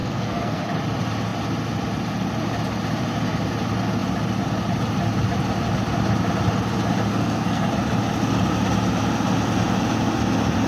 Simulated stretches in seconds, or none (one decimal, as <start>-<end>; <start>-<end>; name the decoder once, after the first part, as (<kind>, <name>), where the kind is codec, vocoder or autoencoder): 0.0-0.6 (codec, SNAC); 7.1-7.7